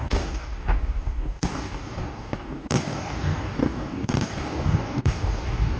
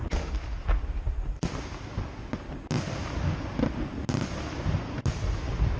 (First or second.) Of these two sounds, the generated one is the first